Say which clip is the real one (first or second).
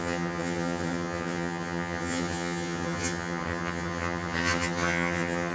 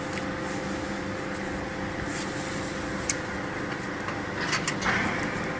second